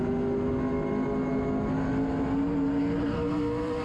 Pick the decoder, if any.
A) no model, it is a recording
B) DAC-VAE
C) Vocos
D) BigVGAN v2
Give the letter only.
A